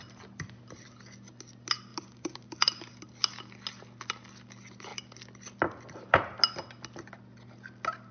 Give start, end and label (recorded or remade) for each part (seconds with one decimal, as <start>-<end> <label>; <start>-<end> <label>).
0.0-1.9 recorded; 1.9-3.0 remade; 3.0-8.1 recorded